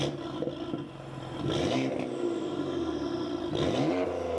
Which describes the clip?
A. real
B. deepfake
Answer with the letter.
A